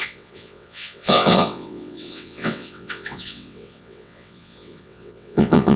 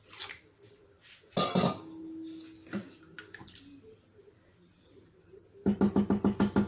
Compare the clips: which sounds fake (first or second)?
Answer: first